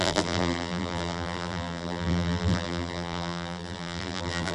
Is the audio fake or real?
fake